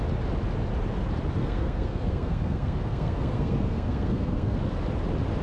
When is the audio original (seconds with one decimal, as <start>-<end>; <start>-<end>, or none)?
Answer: 0.0-1.4; 4.6-5.4